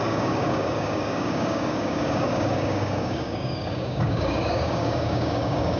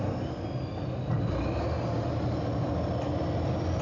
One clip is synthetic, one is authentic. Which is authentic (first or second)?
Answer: second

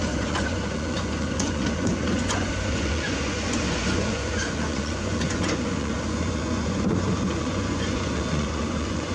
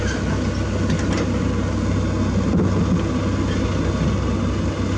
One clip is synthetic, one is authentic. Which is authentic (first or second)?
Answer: second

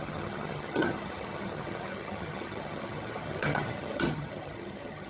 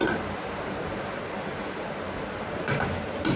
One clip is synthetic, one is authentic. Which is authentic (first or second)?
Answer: second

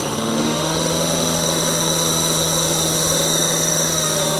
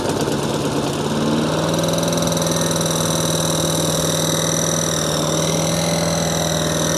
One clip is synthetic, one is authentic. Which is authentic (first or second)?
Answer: second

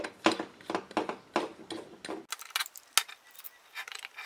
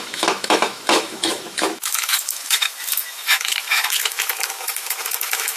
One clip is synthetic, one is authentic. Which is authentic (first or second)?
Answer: first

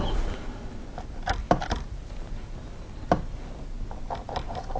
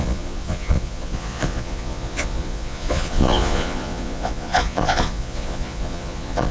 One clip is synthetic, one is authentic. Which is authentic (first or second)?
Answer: first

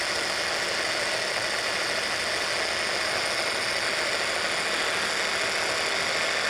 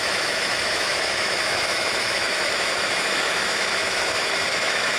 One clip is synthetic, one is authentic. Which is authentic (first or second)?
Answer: first